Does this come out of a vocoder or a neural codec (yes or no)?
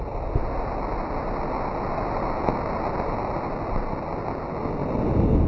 no